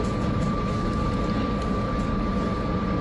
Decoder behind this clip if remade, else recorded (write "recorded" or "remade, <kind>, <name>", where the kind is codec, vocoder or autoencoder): recorded